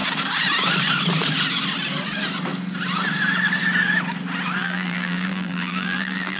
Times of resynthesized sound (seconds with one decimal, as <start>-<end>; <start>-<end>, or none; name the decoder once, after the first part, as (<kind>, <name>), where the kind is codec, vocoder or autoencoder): 4.6-6.4 (vocoder, BigVGAN v2)